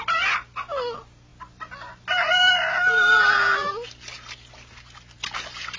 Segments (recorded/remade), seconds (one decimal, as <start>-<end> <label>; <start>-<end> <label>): 0.0-5.8 recorded